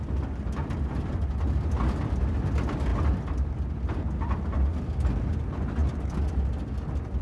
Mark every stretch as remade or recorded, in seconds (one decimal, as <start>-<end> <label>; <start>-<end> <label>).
0.0-7.2 recorded